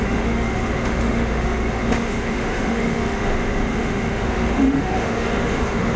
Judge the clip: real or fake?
fake